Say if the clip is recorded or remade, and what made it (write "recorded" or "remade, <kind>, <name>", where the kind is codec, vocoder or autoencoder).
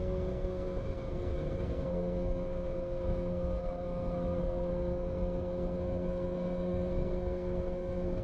remade, codec, SNAC